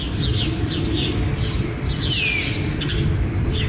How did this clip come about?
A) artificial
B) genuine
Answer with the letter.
B